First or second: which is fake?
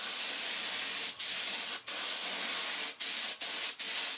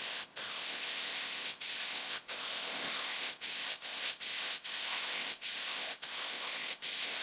second